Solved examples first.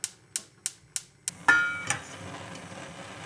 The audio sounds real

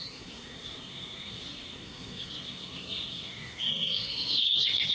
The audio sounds fake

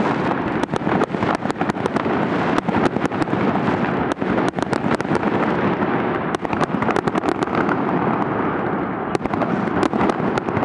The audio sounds real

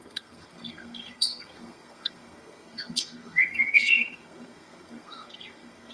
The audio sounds fake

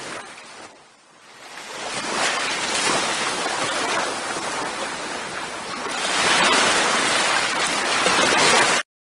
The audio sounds real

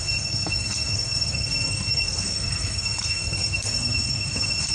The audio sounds fake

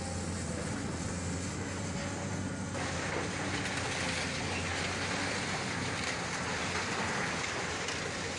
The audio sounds real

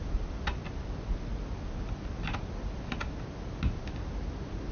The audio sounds real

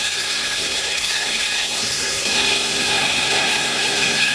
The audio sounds fake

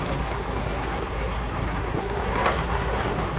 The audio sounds fake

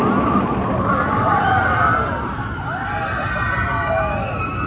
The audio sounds real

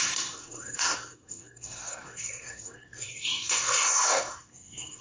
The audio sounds fake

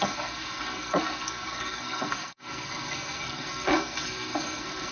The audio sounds fake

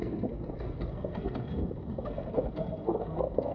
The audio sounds fake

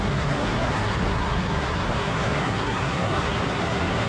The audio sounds fake